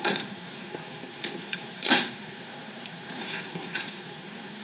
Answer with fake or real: fake